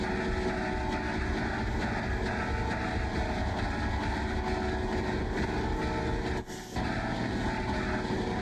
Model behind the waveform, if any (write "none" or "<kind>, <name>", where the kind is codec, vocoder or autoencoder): none